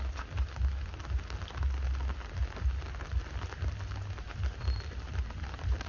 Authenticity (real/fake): real